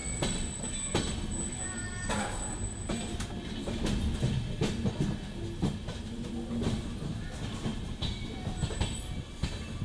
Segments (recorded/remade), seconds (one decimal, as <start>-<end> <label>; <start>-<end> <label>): 0.0-9.8 recorded